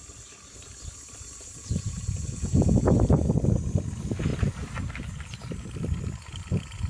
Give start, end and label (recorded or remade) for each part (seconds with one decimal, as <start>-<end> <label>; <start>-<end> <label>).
0.0-1.6 recorded; 1.6-2.8 remade; 2.8-6.9 recorded